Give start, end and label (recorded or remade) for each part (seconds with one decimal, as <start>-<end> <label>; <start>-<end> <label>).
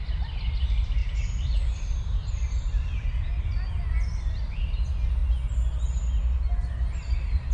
0.0-1.0 recorded; 1.0-2.5 remade; 2.5-7.5 recorded